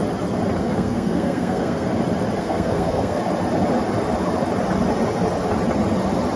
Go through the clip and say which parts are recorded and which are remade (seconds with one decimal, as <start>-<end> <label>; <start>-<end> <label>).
0.0-0.6 recorded; 0.6-1.9 remade; 1.9-2.4 recorded; 2.4-3.2 remade; 3.2-6.4 recorded